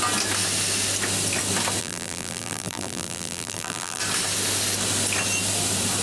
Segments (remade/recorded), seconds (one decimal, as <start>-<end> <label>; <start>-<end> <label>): 0.0-1.8 recorded; 1.8-4.0 remade; 4.0-6.0 recorded